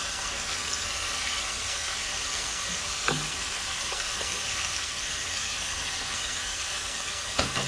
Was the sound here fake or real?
fake